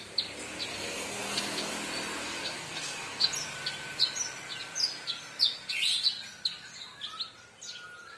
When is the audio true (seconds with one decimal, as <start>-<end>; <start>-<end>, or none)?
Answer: 0.0-0.7; 1.7-2.2; 3.3-8.2